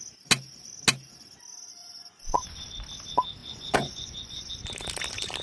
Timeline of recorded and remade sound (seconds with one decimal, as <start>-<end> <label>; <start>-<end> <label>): 0.0-1.8 recorded; 1.8-2.7 remade; 2.7-3.4 recorded; 3.4-4.5 remade; 4.5-5.4 recorded